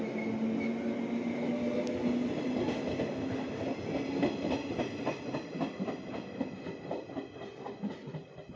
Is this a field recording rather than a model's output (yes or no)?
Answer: yes